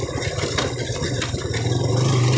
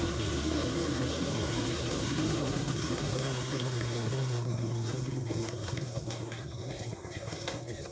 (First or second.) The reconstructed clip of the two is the second